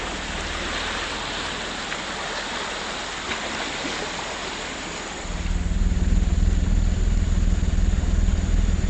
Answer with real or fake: real